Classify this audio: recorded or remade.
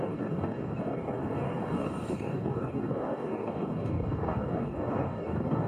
remade